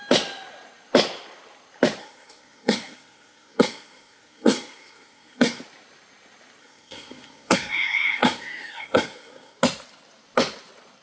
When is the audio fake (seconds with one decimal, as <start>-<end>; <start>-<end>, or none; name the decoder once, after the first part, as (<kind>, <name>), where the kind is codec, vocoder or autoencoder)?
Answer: 2.0-5.6 (codec, SNAC); 6.6-9.6